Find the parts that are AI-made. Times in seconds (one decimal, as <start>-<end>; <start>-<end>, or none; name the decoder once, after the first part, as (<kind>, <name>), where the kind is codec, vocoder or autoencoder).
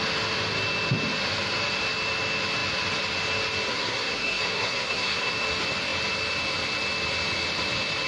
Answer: 3.7-5.3 (codec, SNAC)